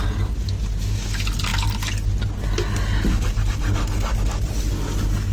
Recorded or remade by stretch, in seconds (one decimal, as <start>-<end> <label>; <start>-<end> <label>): 0.0-5.3 recorded